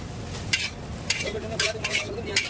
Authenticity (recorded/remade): recorded